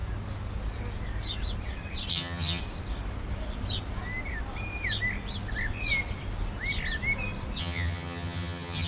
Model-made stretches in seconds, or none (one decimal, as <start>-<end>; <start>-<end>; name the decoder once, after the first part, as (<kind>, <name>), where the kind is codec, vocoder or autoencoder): 2.1-2.6 (vocoder, HiFi-GAN); 7.6-8.9